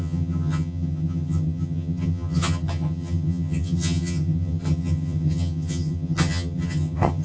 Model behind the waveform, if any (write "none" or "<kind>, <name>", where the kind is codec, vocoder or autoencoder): vocoder, HiFi-GAN